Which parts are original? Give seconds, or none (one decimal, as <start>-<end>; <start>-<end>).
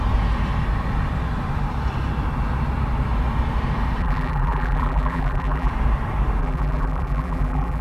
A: 0.0-4.0; 5.7-6.4